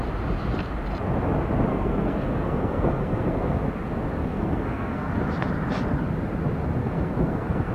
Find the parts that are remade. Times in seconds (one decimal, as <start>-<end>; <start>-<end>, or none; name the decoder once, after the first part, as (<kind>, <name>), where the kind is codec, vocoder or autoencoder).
1.7-3.7 (codec, SNAC); 4.2-5.1; 6.8-7.7